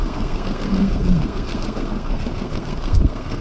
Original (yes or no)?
no